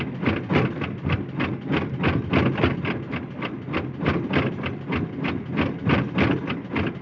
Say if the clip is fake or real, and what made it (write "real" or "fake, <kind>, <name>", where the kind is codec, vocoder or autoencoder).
real